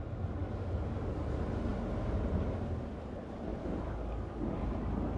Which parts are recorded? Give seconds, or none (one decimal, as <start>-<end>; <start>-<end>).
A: 0.0-0.4; 1.2-3.5; 4.6-5.2